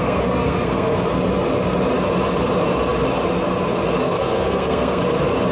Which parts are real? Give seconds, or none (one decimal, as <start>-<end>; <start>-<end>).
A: 1.0-4.0; 5.0-5.5